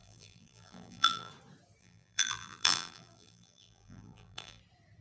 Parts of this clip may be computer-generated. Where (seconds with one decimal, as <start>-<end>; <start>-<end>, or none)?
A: 0.0-1.3; 1.8-4.6